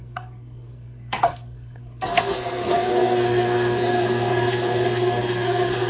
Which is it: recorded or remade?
remade